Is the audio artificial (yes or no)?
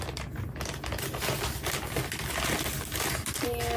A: no